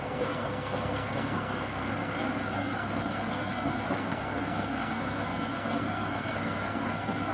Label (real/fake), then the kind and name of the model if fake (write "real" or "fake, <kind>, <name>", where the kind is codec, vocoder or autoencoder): fake, codec, SNAC